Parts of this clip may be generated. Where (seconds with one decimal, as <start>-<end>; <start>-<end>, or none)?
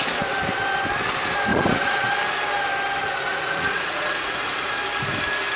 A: 1.5-2.1; 3.3-4.8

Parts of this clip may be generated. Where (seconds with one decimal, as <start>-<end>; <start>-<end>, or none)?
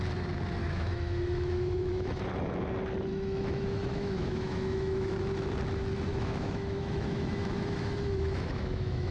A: 0.6-2.2; 3.1-5.3; 6.1-9.1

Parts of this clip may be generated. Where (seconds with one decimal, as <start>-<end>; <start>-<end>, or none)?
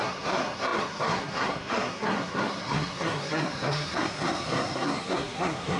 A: 0.0-5.8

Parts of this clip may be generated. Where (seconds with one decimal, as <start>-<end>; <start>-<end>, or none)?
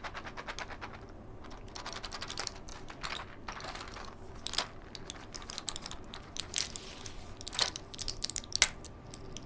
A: none